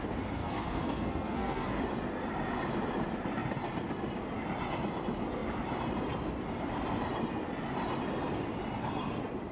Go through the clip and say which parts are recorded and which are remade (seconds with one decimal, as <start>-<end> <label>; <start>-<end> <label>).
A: 0.0-0.4 recorded; 0.4-1.8 remade; 1.8-9.5 recorded